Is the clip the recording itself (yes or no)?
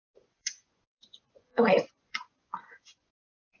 no